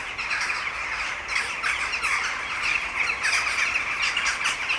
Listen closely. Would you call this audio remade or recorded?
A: recorded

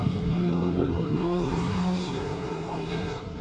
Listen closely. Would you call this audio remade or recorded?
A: remade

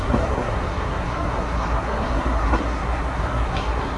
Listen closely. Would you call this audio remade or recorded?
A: remade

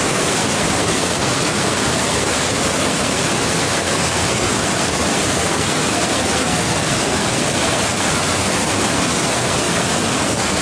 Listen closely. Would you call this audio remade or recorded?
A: remade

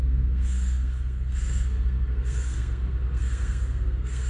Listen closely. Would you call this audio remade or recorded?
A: remade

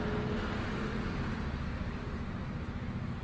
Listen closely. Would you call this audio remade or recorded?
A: recorded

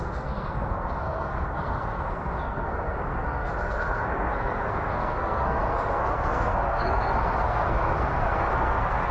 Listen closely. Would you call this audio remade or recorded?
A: remade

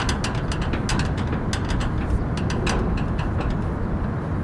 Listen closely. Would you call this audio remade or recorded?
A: recorded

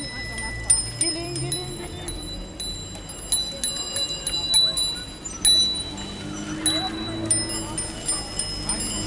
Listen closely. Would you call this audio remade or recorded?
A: recorded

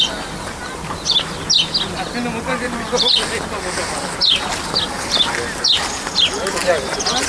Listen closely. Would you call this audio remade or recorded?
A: recorded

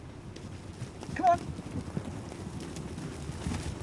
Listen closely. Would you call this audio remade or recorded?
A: recorded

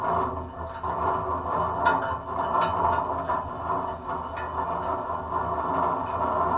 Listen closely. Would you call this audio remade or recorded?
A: recorded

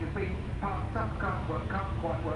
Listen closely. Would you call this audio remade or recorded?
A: recorded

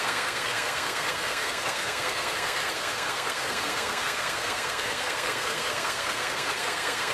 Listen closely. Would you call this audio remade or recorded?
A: remade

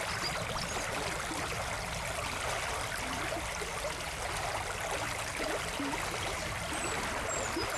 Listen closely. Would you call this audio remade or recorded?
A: recorded